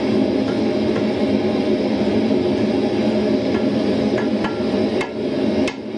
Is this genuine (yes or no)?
yes